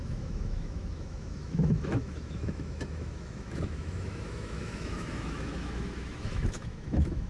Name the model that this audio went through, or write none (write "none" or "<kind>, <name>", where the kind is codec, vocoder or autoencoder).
autoencoder, DAC-VAE